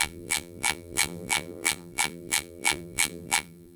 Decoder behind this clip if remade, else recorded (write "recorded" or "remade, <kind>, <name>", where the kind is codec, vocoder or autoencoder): remade, vocoder, BigVGAN v2